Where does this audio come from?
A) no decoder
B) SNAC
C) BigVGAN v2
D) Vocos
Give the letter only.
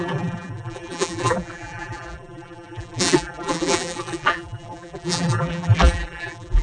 C